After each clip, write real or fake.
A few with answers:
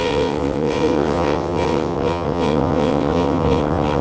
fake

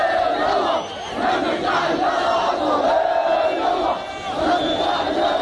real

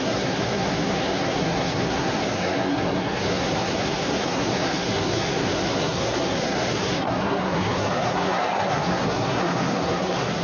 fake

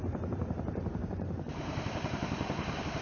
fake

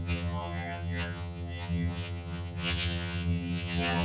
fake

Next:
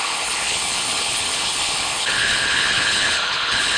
fake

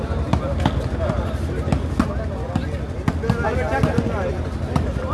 real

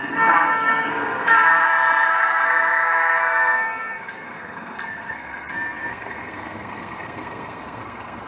fake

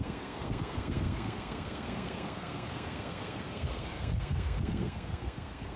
fake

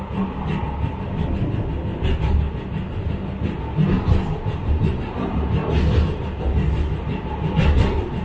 real